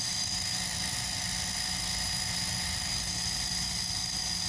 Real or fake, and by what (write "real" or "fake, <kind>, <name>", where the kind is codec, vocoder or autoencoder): real